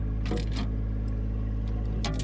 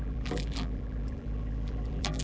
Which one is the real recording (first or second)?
first